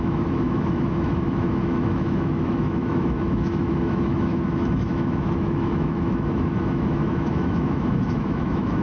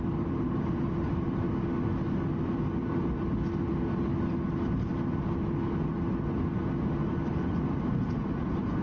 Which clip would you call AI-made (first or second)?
first